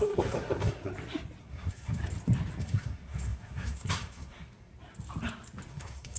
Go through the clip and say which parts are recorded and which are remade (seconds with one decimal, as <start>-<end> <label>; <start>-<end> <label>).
0.0-0.9 remade; 0.9-1.4 recorded; 1.4-2.0 remade; 2.0-2.6 recorded; 2.6-4.7 remade; 4.7-5.7 recorded; 5.7-6.2 remade